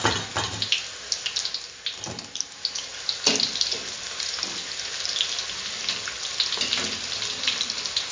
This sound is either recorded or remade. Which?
recorded